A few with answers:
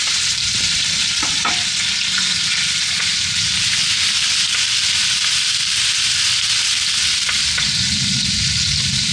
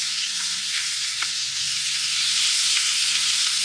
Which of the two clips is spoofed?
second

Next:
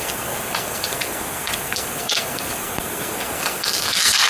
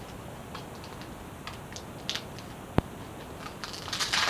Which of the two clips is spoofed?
first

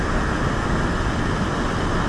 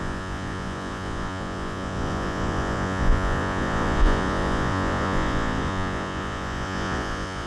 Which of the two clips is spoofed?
second